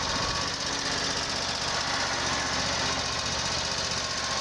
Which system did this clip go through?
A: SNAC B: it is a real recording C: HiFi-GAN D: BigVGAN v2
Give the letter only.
B